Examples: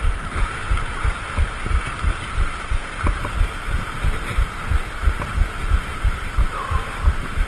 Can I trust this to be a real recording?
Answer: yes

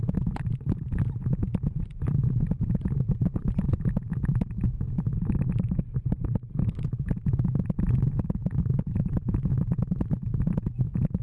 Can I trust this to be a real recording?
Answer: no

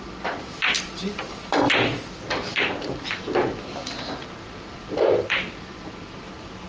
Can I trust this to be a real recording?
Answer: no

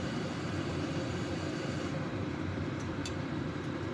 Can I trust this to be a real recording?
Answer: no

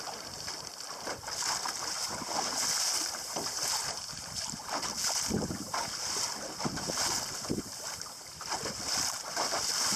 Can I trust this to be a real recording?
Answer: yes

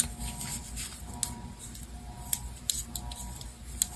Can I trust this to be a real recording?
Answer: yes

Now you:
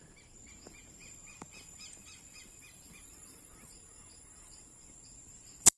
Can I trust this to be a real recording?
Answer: no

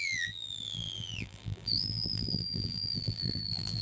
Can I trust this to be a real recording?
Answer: no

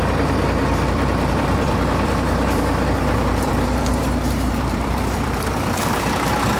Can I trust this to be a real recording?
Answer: no